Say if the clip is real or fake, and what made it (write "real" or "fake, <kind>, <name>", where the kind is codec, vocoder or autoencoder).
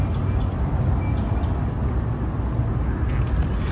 real